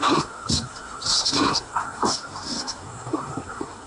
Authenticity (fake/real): fake